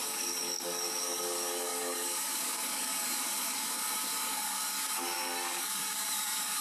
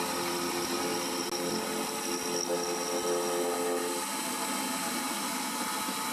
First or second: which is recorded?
second